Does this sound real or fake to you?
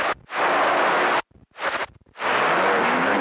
real